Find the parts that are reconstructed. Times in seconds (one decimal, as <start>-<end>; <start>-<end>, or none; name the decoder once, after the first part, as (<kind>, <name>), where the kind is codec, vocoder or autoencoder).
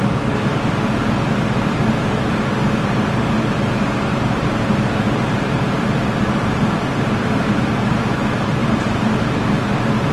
4.1-8.2 (vocoder, BigVGAN v2)